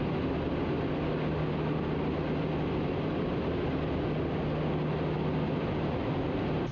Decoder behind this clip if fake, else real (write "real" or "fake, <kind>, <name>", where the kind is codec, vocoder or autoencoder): real